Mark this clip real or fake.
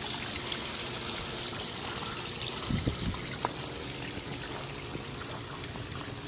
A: real